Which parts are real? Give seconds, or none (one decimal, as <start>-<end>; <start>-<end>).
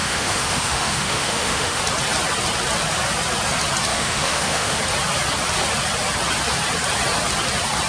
1.8-3.9; 4.8-7.9